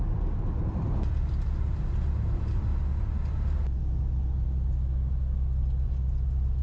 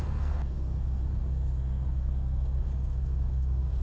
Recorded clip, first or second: first